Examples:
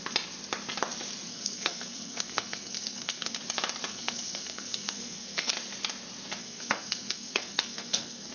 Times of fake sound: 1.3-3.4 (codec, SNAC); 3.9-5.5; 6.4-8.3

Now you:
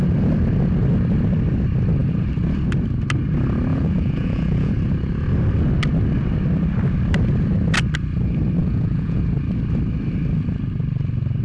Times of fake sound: 3.7-4.7 (vocoder, Vocos); 8.6-9.2

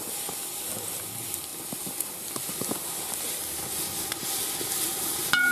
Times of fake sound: 1.5-4.8 (vocoder, BigVGAN v2)

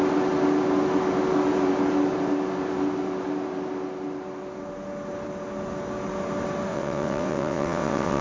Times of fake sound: 6.7-8.2 (vocoder, WaveNeXt)

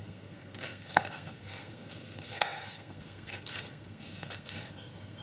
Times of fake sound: 0.0-5.2 (codec, SNAC)